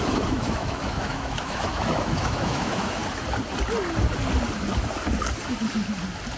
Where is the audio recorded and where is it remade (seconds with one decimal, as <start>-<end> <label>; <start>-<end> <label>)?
0.0-3.0 remade; 3.0-6.4 recorded